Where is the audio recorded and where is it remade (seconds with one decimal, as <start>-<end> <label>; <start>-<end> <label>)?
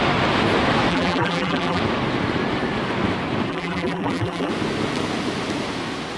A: 0.0-0.9 recorded; 0.9-1.8 remade; 1.8-3.5 recorded; 3.5-4.5 remade; 4.5-6.2 recorded